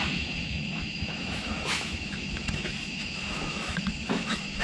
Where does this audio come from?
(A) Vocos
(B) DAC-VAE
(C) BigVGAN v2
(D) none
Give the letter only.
B